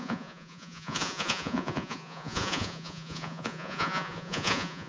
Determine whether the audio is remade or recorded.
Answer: remade